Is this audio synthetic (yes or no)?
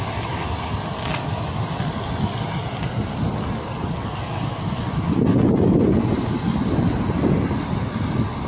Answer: no